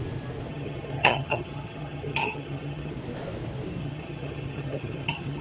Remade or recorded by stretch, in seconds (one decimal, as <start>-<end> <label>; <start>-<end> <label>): 0.0-0.5 recorded; 0.5-2.9 remade; 2.9-3.8 recorded; 3.8-5.4 remade